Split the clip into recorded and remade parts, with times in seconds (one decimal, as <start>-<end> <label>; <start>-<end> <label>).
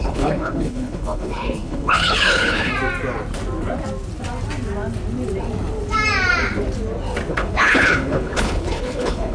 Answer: 0.0-2.7 remade; 2.7-7.3 recorded; 7.3-9.3 remade